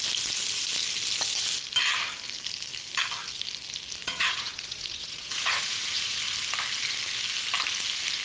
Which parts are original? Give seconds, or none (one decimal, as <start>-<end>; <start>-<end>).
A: 0.0-4.0; 6.1-8.2